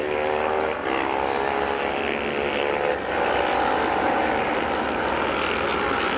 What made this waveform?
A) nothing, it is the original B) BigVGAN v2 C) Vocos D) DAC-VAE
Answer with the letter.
A